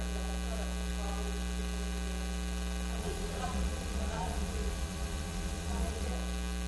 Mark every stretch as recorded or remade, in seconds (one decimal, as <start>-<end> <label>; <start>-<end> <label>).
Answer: 0.0-3.0 recorded; 3.0-6.1 remade; 6.1-6.7 recorded